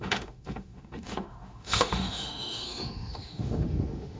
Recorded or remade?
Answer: remade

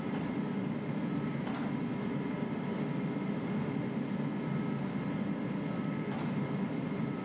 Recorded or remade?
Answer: recorded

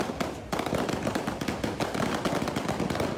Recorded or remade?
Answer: recorded